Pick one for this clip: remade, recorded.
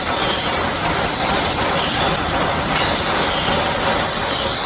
recorded